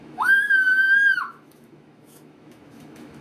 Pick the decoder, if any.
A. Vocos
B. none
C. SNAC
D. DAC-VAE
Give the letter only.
D